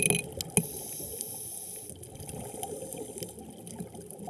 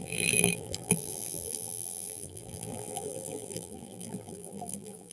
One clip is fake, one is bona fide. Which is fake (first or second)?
second